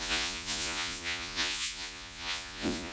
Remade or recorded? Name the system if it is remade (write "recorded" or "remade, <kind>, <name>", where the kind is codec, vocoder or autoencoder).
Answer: remade, vocoder, Vocos